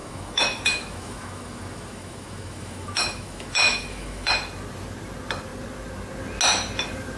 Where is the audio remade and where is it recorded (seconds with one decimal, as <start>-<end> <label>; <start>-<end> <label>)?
0.0-4.3 remade; 4.3-7.2 recorded

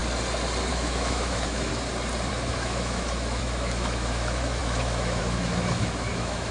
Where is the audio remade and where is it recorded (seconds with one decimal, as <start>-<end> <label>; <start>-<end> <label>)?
0.0-0.7 recorded; 0.7-1.7 remade; 1.7-2.3 recorded; 2.3-6.5 remade

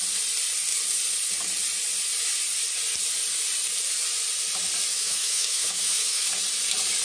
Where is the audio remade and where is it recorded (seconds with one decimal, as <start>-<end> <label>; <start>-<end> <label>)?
0.0-4.9 recorded; 4.9-6.3 remade; 6.3-7.0 recorded

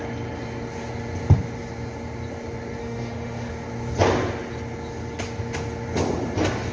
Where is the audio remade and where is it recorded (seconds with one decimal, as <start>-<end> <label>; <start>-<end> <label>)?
0.0-2.8 recorded; 2.8-3.5 remade; 3.5-6.7 recorded

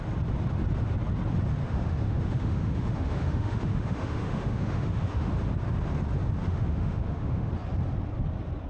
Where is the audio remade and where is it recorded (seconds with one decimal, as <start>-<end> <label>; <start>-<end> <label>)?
0.0-1.6 recorded; 1.6-5.3 remade; 5.3-6.5 recorded; 6.5-7.5 remade; 7.5-8.7 recorded

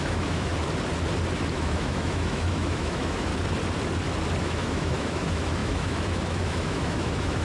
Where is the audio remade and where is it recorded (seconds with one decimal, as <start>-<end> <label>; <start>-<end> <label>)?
0.0-0.5 remade; 0.5-1.5 recorded; 1.5-3.3 remade; 3.3-4.4 recorded; 4.4-7.4 remade

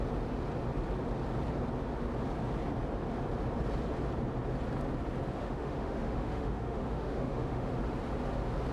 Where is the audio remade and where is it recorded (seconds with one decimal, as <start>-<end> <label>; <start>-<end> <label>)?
0.0-5.4 recorded; 5.4-7.7 remade; 7.7-8.7 recorded

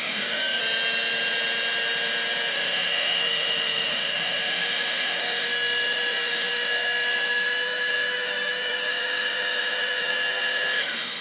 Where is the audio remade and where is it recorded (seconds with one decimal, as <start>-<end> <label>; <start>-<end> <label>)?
0.0-0.6 remade; 0.6-2.5 recorded; 2.5-11.2 remade